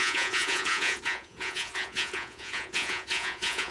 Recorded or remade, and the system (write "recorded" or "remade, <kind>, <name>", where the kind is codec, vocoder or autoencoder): remade, vocoder, Vocos